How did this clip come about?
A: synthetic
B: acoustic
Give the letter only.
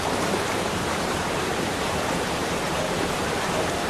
A